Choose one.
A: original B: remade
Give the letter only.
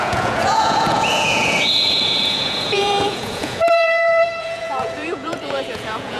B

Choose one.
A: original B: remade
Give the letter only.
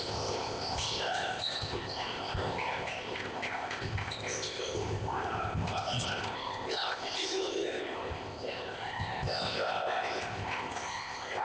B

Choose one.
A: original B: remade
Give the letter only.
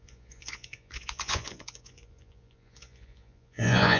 B